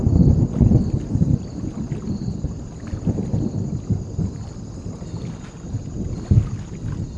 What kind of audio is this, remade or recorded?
recorded